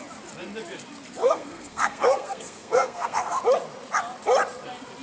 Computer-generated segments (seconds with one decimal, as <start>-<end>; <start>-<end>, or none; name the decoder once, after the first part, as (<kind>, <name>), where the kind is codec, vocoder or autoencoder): 1.2-3.4 (codec, SNAC)